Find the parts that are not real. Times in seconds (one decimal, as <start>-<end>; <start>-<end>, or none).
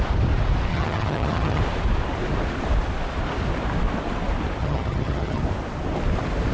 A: 0.7-1.6; 4.6-5.4